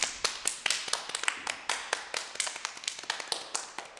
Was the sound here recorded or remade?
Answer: recorded